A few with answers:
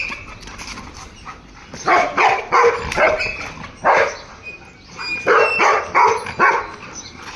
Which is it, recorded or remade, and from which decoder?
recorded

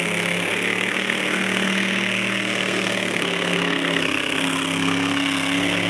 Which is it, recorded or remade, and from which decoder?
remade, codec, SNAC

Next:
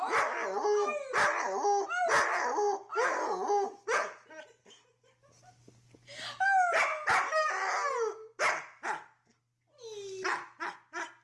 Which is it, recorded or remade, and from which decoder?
recorded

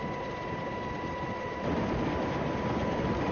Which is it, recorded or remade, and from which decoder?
recorded